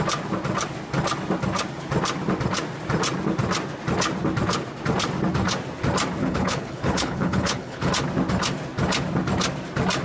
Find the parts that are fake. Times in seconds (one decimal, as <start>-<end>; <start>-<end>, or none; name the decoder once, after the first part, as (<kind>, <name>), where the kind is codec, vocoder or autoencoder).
6.2-7.9 (codec, HILCodec)